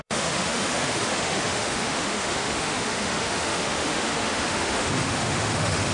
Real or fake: fake